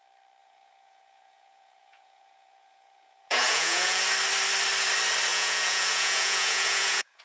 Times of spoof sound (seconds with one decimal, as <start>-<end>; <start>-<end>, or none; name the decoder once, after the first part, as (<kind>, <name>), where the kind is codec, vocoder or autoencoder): 0.4-4.0 (vocoder, Vocos); 5.3-7.2